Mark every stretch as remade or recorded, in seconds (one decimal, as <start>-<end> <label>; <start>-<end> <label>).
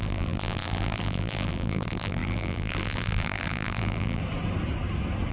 0.0-4.2 remade; 4.2-5.3 recorded